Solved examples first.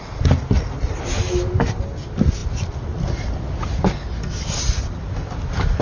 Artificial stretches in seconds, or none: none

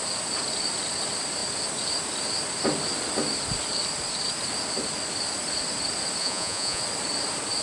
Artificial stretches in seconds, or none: 6.2-6.8 (vocoder, Vocos)

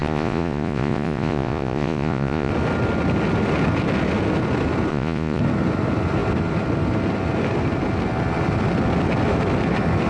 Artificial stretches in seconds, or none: 0.0-2.5 (vocoder, Vocos); 4.9-5.4

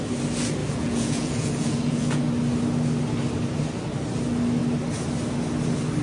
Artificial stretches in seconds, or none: 0.6-2.2 (vocoder, Vocos)

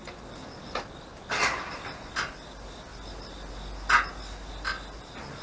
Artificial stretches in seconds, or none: none

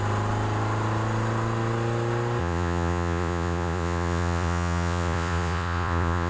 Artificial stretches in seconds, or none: 2.4-6.3 (vocoder, Vocos)